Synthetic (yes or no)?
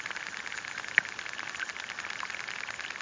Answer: no